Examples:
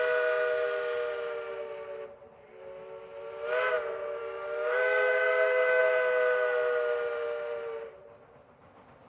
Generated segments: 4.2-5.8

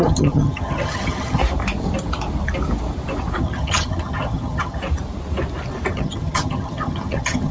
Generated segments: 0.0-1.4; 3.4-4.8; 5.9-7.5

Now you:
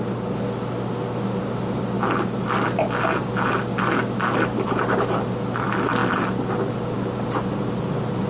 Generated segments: none